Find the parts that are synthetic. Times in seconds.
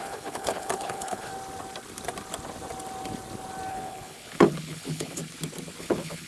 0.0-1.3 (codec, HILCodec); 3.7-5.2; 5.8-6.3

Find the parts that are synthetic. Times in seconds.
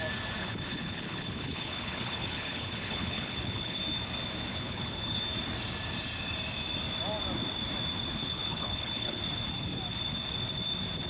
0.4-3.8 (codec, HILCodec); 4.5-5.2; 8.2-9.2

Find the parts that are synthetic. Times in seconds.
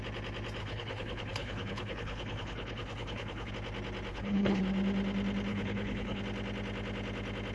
0.6-3.5 (codec, HILCodec); 4.1-4.6; 5.5-6.2